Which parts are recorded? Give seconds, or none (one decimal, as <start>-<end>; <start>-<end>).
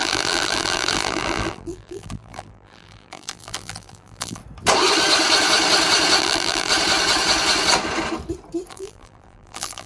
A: 4.4-6.2; 6.7-8.7